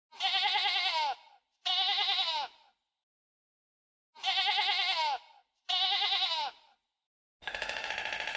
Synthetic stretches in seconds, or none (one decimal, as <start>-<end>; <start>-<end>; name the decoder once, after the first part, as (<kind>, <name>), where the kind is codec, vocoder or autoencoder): 7.4-7.9 (autoencoder, DAC-VAE)